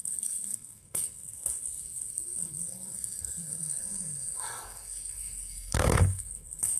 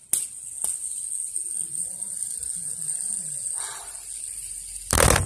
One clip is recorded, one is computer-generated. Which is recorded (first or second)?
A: second